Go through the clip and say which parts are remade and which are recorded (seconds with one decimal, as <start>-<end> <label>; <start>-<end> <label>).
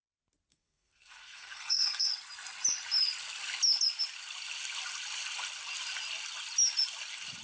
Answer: 0.0-0.5 recorded; 0.5-2.1 remade; 2.1-7.4 recorded